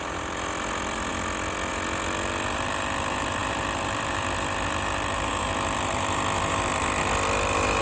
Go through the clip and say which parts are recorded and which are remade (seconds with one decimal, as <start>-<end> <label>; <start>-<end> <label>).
0.0-1.1 remade; 1.1-1.7 recorded; 1.7-7.8 remade